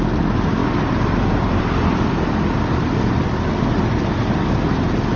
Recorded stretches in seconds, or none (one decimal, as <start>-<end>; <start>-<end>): 0.0-5.2